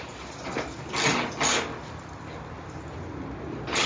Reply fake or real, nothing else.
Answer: real